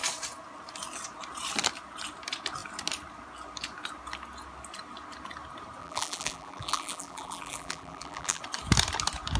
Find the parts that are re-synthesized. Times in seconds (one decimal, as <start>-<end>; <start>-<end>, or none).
5.8-8.4